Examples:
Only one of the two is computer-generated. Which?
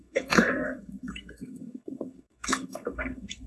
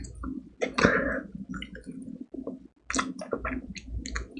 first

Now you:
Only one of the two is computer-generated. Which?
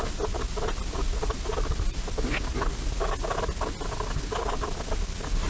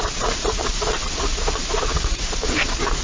second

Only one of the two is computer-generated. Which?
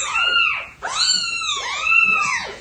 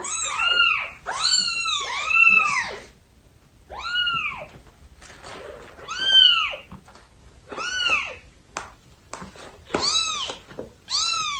first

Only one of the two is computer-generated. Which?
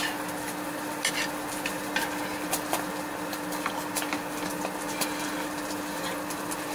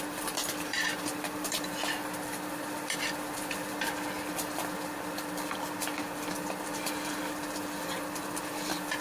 second